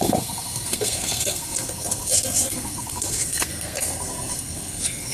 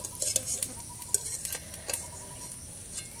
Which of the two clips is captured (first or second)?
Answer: second